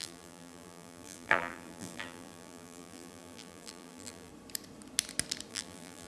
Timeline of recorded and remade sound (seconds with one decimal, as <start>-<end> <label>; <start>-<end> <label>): 0.0-4.3 remade; 4.3-5.5 recorded; 5.5-6.1 remade